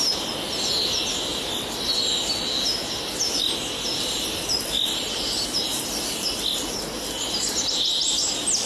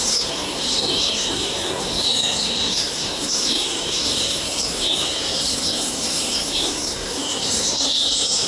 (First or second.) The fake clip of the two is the second